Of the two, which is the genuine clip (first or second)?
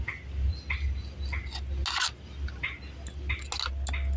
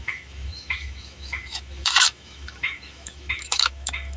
first